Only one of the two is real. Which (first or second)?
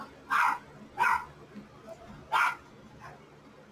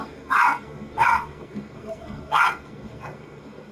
first